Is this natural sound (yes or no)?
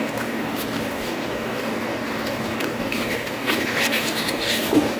no